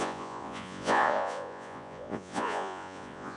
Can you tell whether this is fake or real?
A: fake